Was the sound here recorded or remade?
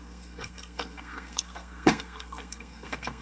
remade